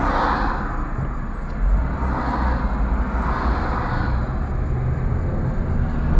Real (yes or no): yes